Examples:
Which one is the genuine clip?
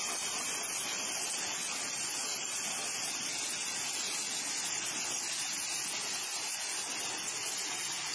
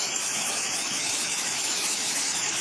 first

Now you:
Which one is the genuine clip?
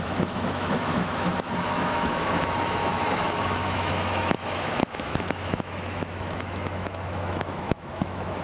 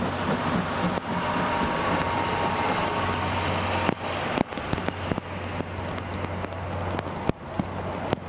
second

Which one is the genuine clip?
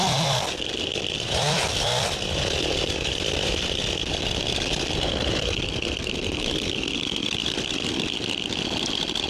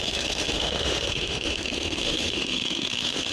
first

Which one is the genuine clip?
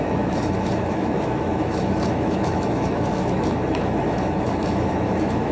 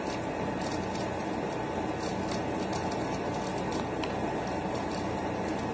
second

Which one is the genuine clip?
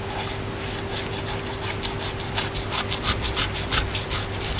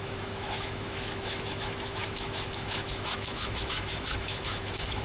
first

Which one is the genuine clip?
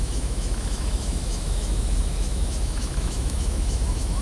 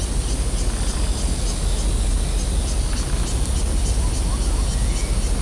second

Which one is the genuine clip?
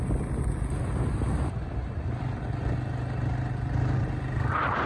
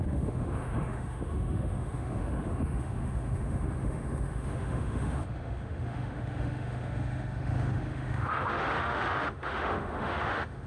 first